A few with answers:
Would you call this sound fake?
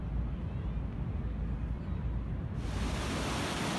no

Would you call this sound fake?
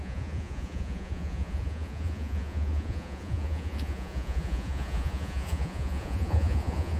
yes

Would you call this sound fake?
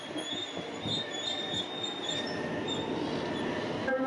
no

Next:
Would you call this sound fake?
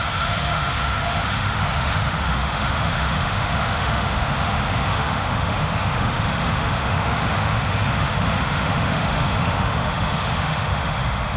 yes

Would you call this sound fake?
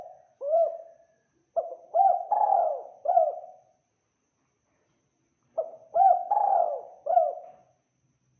no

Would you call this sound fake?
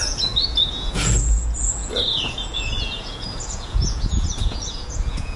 yes